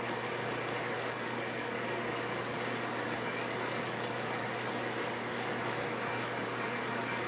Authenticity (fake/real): fake